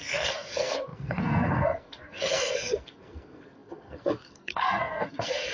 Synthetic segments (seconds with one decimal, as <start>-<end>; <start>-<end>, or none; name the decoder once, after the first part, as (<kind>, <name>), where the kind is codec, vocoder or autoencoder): 0.0-5.5 (codec, SNAC)